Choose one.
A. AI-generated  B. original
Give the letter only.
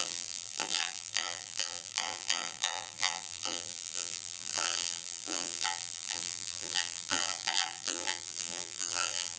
A